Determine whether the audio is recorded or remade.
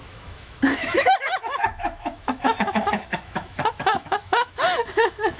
remade